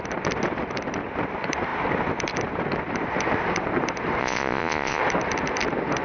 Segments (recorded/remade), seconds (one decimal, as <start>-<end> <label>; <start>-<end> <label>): 0.0-4.2 recorded; 4.2-5.0 remade; 5.0-6.0 recorded